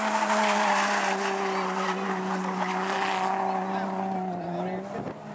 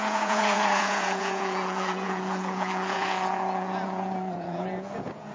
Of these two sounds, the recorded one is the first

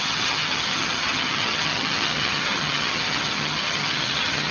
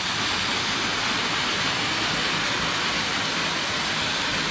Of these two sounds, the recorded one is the second